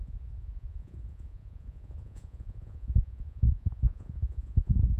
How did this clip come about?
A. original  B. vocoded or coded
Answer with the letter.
B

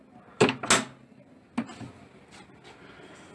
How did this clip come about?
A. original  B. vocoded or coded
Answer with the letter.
A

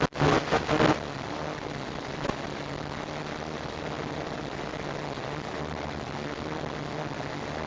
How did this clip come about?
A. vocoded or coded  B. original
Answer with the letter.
B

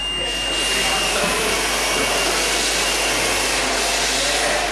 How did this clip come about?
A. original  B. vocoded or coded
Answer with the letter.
A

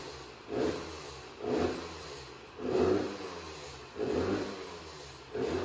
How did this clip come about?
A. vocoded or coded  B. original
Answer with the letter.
B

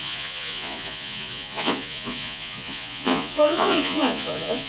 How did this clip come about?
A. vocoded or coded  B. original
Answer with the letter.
A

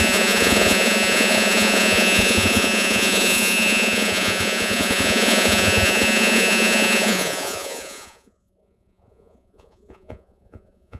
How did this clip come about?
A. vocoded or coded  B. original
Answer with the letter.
A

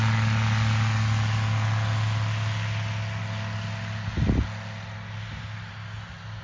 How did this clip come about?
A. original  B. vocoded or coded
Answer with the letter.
A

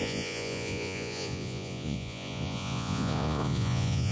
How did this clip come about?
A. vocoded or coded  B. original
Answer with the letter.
A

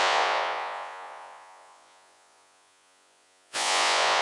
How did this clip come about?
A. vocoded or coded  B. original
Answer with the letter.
A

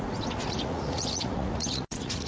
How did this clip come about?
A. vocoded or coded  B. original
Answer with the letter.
A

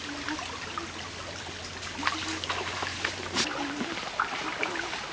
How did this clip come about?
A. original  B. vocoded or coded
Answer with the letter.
A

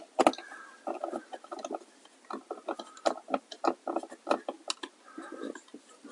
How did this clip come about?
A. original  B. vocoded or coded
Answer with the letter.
A